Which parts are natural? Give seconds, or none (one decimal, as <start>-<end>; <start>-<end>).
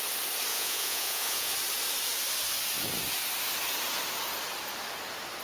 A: 0.0-0.5; 1.5-5.4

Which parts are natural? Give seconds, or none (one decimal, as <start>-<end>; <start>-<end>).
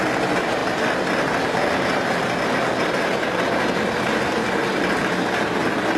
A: 0.0-0.6; 2.2-6.0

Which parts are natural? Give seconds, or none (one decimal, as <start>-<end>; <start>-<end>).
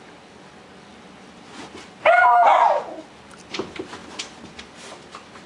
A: 0.0-5.5